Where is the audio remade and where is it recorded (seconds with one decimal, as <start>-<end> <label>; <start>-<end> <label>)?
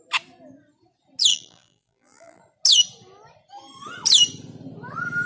0.0-1.3 recorded; 1.3-2.4 remade; 2.4-5.3 recorded